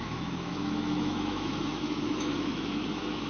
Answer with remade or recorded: remade